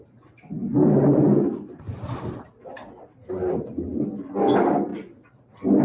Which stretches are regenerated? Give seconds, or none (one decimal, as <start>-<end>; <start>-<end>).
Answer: 0.6-4.0